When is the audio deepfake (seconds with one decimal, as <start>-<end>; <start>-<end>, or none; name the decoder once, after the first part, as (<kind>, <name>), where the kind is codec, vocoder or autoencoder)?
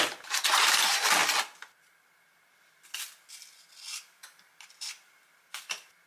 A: 0.0-1.2 (vocoder, BigVGAN v2); 3.7-6.1